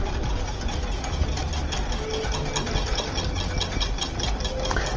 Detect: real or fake real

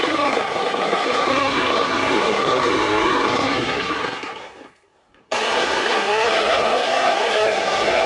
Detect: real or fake fake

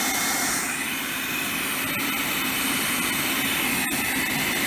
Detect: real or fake real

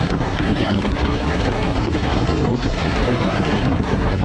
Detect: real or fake fake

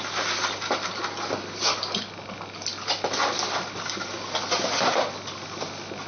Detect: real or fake real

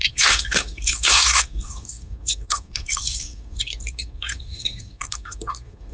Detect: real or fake fake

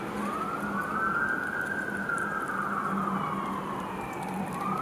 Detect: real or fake real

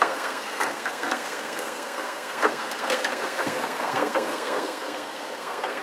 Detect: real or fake fake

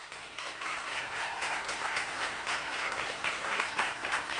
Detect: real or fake fake